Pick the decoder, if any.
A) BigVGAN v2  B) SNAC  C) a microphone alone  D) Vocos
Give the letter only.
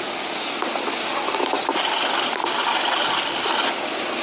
C